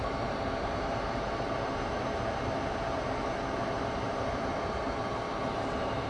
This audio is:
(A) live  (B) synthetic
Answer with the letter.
B